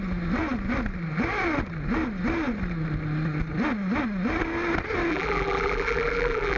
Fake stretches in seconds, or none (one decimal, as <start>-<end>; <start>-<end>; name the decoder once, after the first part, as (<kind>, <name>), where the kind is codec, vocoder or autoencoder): 5.1-6.6 (vocoder, BigVGAN v2)